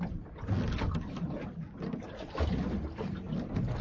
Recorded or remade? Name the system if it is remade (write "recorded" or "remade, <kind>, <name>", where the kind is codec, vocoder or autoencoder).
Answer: recorded